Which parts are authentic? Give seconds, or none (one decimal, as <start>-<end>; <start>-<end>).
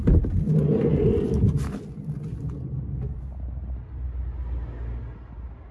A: 0.0-5.7